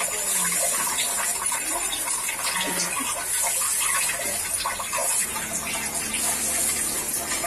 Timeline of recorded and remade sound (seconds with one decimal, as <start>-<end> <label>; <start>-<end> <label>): 0.0-5.0 recorded; 5.0-5.7 remade; 5.7-7.5 recorded